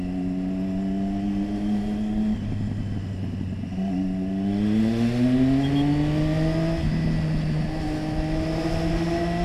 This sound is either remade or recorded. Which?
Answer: recorded